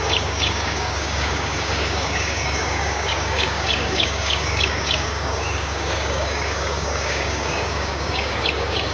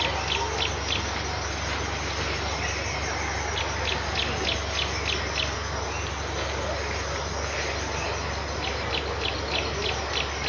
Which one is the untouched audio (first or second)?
second